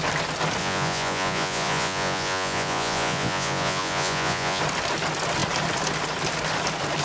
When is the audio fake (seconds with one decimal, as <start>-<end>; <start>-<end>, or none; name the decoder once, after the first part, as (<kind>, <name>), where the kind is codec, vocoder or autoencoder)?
0.6-4.6 (vocoder, Vocos)